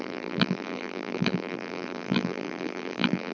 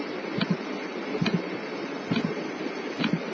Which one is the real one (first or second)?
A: second